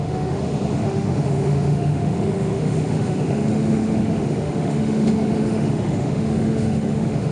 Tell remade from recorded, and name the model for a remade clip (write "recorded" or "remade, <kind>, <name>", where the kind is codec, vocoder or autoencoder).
remade, autoencoder, DAC-VAE